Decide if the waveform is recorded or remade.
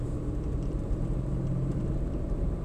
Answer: remade